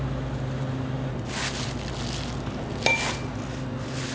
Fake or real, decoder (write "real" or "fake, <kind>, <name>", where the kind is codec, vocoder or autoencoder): real